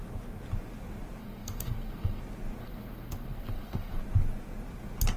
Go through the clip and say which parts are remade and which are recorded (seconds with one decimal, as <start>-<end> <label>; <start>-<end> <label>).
0.0-1.2 recorded; 1.2-2.2 remade; 2.2-2.6 recorded; 2.6-4.0 remade; 4.0-5.2 recorded